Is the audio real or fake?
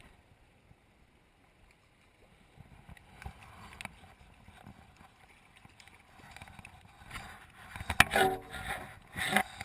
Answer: real